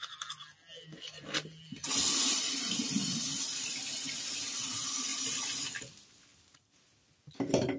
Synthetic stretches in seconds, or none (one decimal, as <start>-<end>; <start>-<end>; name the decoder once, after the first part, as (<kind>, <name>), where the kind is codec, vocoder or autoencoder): none

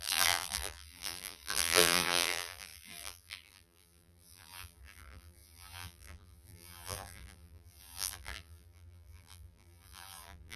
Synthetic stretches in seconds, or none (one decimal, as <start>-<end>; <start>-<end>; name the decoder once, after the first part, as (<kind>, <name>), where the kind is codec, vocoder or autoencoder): 0.0-10.6 (vocoder, BigVGAN v2)